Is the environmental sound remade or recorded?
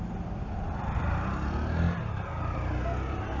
recorded